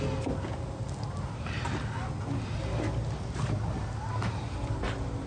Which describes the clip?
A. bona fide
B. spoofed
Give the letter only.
A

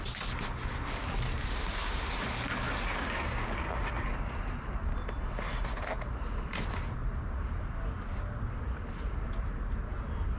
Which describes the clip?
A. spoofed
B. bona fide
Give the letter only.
B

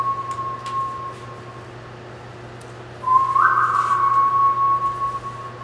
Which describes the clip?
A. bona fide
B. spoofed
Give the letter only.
A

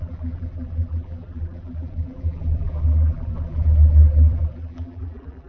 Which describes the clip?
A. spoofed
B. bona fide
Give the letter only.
A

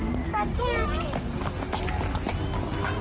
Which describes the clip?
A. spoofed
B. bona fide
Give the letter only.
B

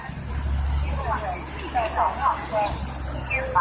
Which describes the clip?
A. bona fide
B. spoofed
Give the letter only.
A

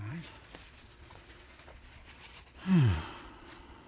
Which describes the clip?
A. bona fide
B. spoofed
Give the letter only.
B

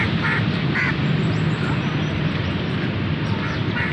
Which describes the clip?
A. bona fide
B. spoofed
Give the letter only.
A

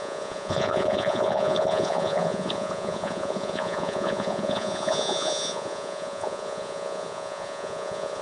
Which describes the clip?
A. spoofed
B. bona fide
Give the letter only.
A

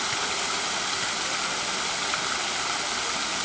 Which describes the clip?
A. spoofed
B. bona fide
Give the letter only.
B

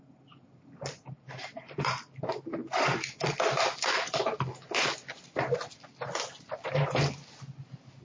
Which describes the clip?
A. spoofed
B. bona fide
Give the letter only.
B